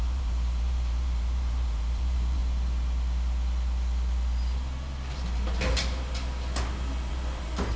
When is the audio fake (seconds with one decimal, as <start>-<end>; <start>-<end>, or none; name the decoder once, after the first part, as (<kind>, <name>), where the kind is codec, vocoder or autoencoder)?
0.0-2.4 (vocoder, BigVGAN v2); 7.1-7.8